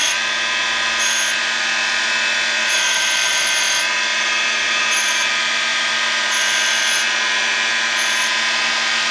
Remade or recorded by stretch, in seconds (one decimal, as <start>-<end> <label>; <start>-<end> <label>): 0.0-2.6 recorded; 2.6-3.5 remade; 3.5-4.1 recorded; 4.1-5.3 remade; 5.3-9.1 recorded